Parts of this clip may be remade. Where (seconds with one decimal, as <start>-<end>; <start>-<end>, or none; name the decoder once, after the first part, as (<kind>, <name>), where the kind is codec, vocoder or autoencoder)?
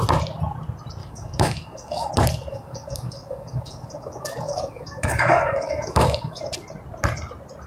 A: 1.0-2.1 (codec, DAC); 2.5-6.4